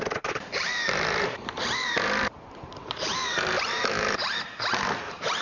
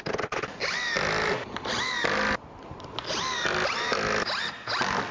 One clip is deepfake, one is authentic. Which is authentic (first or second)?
second